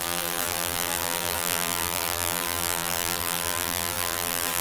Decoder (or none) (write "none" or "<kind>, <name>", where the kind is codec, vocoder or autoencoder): vocoder, BigVGAN v2